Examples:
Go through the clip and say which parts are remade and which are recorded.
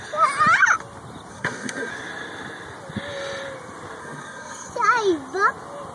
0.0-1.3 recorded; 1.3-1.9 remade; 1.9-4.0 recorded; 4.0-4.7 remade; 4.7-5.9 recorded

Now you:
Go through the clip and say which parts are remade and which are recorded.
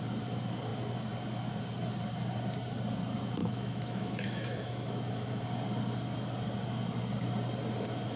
0.0-3.4 recorded; 3.4-5.4 remade; 5.4-8.2 recorded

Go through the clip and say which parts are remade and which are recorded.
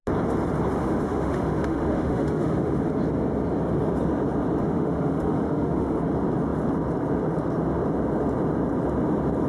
0.0-0.8 recorded; 0.8-2.8 remade; 2.8-4.6 recorded; 4.6-6.0 remade; 6.0-9.5 recorded